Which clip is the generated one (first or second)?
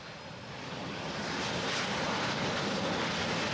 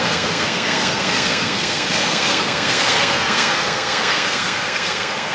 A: second